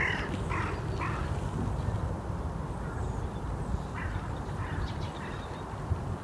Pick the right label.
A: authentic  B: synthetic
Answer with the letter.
A